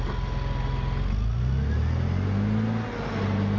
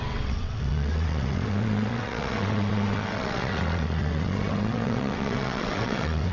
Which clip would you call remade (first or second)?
second